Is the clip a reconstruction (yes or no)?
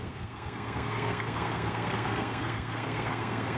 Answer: yes